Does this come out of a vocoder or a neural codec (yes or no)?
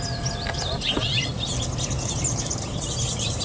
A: no